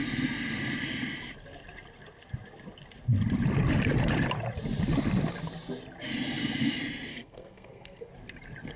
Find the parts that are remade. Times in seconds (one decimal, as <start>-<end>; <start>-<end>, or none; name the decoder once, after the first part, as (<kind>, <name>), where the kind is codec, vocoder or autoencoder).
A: 7.1-8.1 (codec, SNAC)